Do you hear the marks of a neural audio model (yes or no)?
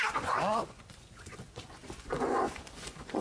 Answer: yes